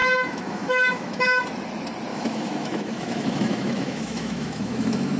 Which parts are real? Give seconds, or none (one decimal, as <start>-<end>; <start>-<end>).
1.4-2.1